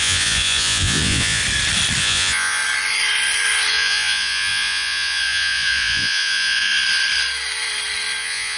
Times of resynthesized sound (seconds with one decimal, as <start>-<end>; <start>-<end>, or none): 0.0-1.4; 2.0-2.6; 3.7-6.7; 8.2-8.6